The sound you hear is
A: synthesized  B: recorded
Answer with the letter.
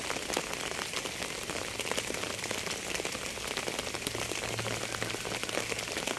B